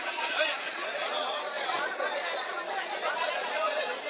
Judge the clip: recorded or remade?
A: remade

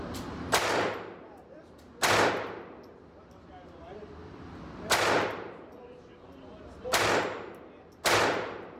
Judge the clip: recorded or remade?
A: recorded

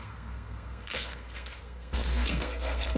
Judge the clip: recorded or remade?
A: remade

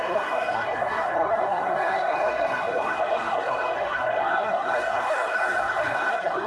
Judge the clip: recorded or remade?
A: remade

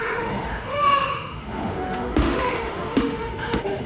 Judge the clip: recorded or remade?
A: remade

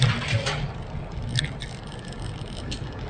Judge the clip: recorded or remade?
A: recorded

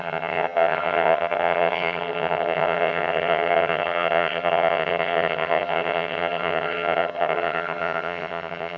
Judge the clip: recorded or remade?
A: remade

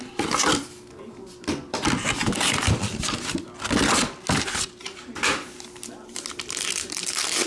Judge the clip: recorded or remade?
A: recorded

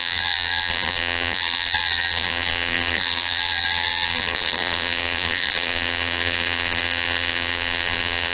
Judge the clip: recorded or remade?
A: remade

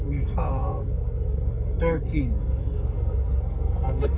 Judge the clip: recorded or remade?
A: remade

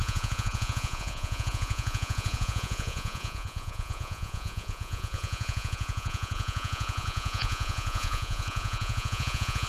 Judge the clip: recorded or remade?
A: remade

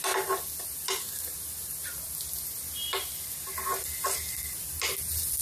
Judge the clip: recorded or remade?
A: recorded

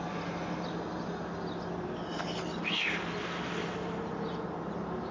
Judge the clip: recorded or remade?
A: recorded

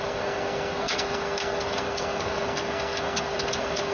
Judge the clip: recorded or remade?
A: remade